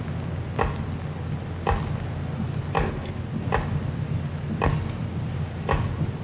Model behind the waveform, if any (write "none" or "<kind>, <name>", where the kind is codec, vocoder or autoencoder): none